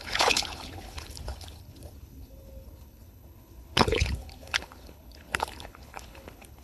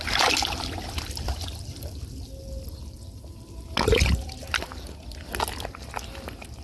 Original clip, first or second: second